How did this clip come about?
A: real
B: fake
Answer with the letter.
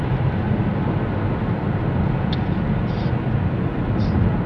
A